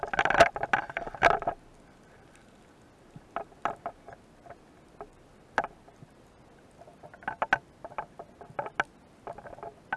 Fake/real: real